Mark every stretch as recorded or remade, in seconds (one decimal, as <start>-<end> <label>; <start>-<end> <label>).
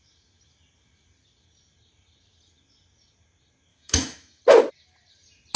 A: 0.0-3.7 recorded; 3.7-4.4 remade; 4.4-5.6 recorded